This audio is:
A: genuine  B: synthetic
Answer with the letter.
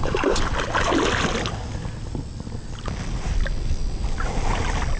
A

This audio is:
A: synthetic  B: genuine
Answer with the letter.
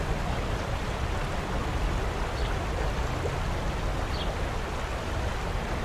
B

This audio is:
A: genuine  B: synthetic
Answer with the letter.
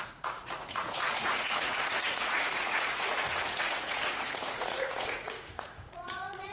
B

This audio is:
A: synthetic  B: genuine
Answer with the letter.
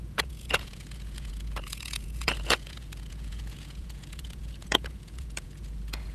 A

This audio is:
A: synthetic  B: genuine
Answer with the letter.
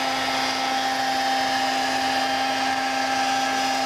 B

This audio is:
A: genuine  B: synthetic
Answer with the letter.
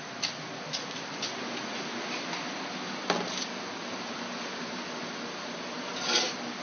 A